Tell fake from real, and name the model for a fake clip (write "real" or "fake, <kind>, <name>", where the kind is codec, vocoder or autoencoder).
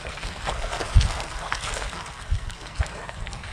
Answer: fake, codec, SNAC